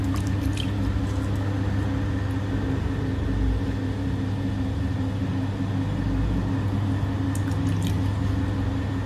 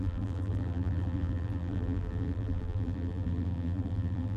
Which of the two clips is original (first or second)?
first